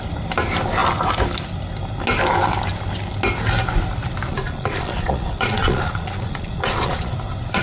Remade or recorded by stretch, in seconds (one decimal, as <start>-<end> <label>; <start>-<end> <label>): 0.0-4.3 recorded; 4.3-7.1 remade; 7.1-7.6 recorded